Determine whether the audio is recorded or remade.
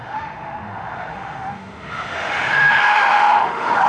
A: remade